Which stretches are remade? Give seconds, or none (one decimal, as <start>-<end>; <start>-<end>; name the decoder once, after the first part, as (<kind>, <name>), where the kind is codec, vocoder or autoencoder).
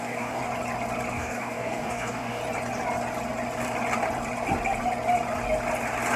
0.0-0.4 (codec, DAC); 1.1-2.4